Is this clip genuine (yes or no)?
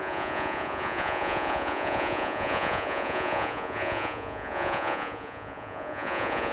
no